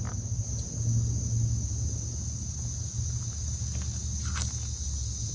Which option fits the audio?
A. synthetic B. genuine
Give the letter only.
B